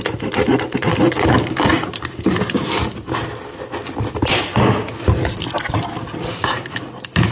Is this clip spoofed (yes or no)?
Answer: no